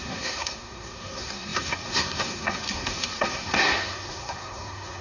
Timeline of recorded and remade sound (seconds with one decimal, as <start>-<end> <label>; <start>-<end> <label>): 0.0-5.0 remade